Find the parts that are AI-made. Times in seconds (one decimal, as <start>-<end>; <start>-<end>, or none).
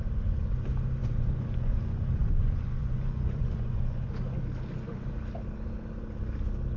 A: 1.0-4.1